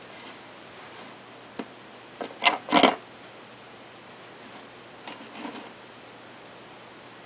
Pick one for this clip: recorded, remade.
recorded